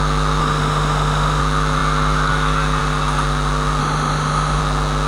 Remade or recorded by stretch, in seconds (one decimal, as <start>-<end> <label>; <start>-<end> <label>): 0.0-0.4 recorded; 0.4-1.4 remade; 1.4-3.8 recorded; 3.8-4.6 remade; 4.6-5.1 recorded